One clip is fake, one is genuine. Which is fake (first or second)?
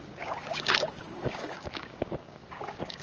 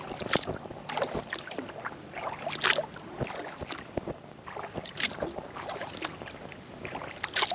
first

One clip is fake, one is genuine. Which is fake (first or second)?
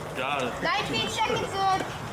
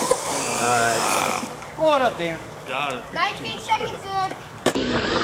second